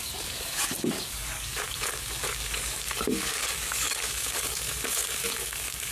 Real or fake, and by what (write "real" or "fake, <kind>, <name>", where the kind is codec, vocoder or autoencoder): fake, codec, DAC